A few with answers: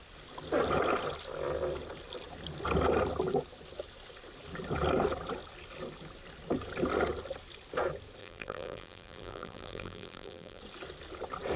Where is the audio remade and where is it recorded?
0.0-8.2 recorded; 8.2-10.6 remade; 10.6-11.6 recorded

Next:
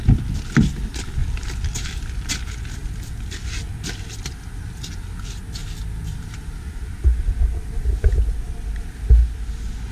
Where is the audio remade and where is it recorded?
0.0-1.2 recorded; 1.2-2.3 remade; 2.3-2.8 recorded; 2.8-3.5 remade; 3.5-5.6 recorded; 5.6-6.2 remade; 6.2-9.9 recorded

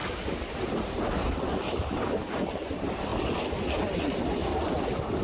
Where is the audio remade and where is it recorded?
0.0-0.7 recorded; 0.7-3.1 remade; 3.1-4.0 recorded; 4.0-4.5 remade; 4.5-5.2 recorded

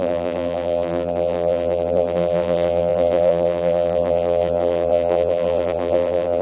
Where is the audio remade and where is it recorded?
0.0-6.4 remade

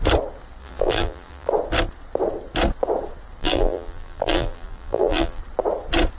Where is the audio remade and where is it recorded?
0.0-0.6 recorded; 0.6-1.5 remade; 1.5-3.4 recorded; 3.4-5.4 remade; 5.4-6.2 recorded